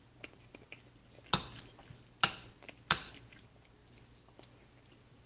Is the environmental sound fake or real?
real